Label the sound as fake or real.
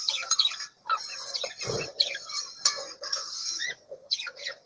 fake